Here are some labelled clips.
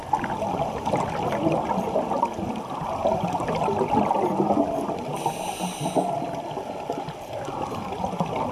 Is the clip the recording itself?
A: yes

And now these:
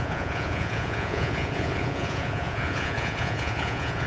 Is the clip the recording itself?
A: no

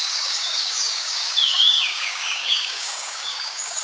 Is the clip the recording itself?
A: no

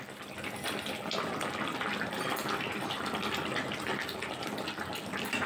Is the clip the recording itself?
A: yes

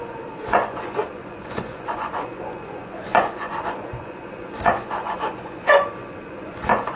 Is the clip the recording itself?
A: no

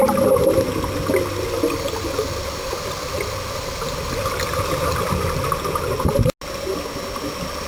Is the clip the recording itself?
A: yes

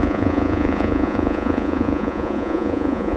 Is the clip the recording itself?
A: no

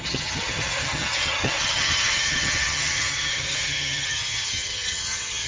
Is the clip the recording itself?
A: no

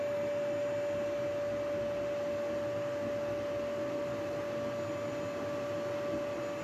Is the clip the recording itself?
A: yes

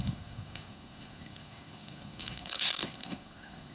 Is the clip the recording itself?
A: no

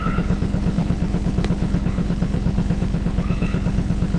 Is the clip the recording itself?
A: no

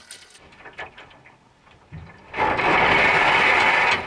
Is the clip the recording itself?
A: yes